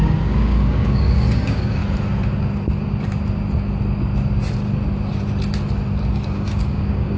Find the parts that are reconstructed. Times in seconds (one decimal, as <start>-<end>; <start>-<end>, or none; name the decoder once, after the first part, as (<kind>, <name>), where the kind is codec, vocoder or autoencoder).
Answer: 0.0-1.8 (codec, DAC); 6.1-7.2